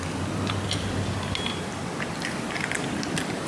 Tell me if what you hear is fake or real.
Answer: real